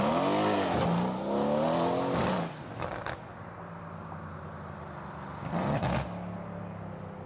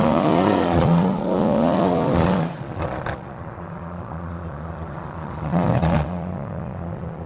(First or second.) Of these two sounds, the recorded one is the first